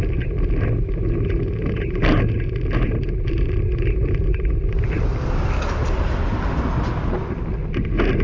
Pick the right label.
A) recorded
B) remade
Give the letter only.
A